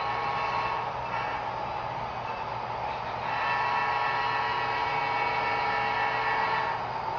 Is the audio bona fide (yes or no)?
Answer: yes